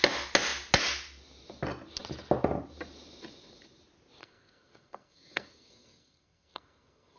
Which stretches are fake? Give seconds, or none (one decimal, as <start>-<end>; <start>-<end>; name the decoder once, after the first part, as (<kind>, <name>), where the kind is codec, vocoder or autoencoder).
4.2-7.2 (codec, SNAC)